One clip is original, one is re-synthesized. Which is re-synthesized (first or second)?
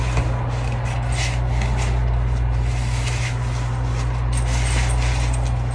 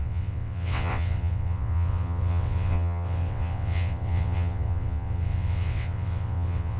second